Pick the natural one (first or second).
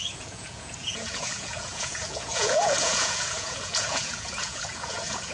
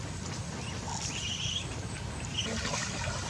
second